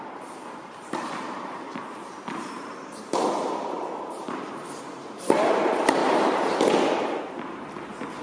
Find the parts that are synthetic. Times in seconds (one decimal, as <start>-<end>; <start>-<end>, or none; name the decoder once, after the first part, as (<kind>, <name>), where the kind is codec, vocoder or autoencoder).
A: 0.0-6.0 (vocoder, BigVGAN v2)